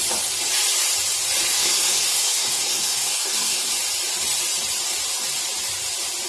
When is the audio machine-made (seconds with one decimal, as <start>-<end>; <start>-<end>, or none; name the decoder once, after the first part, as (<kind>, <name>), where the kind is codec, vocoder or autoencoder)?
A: 1.5-3.7 (codec, SNAC)

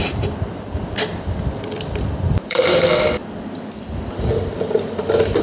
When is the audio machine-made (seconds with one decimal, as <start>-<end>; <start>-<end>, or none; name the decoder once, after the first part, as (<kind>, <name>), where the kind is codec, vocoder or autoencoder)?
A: 0.0-3.2 (vocoder, BigVGAN v2); 3.7-5.4

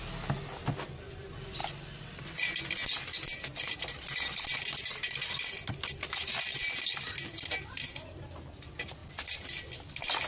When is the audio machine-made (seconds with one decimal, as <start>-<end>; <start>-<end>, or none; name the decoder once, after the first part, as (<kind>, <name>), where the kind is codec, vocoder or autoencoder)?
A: none